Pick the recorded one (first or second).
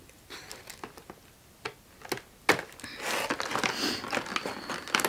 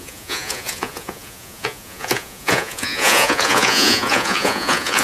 first